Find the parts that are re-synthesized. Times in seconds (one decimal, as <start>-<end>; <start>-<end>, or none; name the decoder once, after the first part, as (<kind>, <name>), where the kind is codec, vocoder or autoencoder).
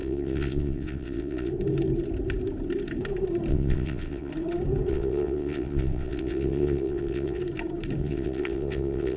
0.0-1.5 (vocoder, WaveNeXt); 3.5-4.3; 4.9-7.4; 8.0-9.2